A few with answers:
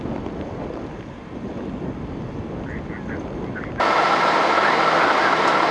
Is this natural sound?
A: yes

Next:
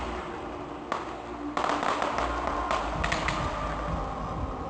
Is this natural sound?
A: yes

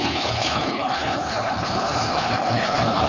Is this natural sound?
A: no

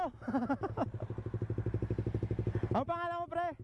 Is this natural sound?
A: yes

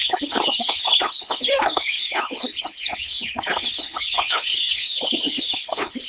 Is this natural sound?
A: no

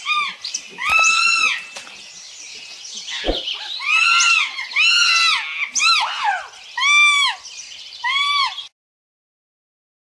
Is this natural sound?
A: yes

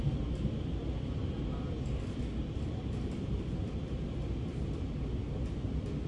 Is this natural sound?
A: yes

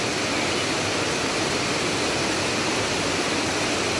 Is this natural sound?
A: yes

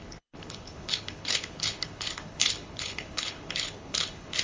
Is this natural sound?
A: no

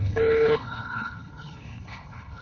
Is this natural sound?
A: no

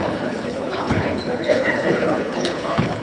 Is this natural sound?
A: no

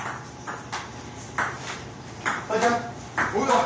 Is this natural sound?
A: yes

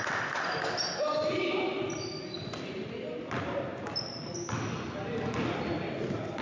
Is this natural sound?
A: yes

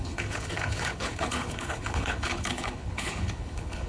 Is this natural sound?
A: no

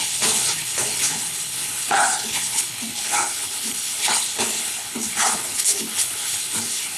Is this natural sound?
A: no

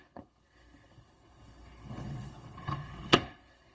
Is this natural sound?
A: no